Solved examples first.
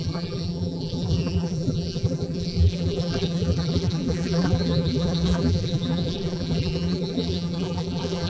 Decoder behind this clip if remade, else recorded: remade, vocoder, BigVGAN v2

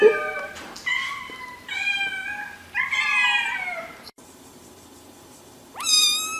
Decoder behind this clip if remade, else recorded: remade, vocoder, BigVGAN v2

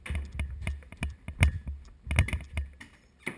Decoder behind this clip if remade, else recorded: recorded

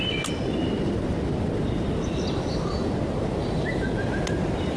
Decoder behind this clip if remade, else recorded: recorded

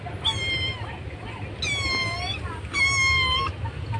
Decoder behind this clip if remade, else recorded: recorded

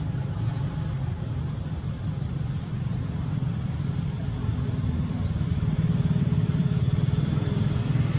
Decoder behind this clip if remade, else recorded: remade, vocoder, BigVGAN v2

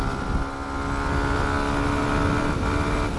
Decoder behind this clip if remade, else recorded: recorded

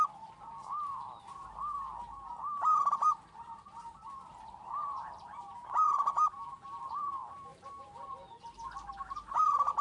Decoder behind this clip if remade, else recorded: remade, vocoder, BigVGAN v2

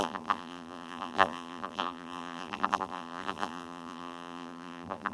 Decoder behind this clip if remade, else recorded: remade, vocoder, BigVGAN v2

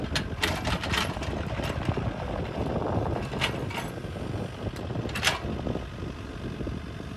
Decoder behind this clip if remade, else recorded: recorded